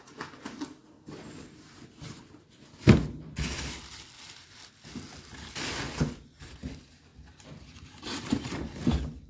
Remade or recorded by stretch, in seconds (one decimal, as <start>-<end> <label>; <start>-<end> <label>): 0.0-9.3 recorded